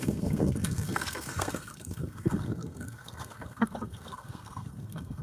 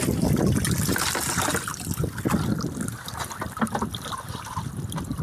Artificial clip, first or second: first